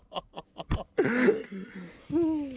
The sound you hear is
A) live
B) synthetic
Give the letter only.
A